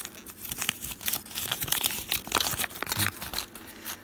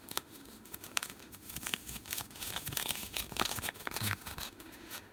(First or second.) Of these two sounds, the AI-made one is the second